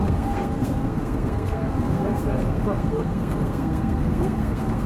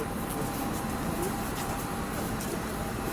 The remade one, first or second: first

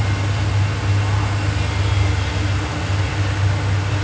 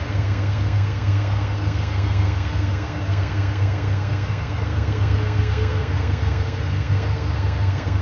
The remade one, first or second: second